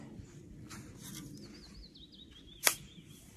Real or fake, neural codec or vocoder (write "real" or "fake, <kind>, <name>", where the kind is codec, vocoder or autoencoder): real